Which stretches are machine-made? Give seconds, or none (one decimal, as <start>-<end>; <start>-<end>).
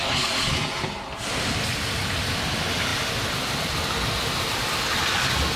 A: none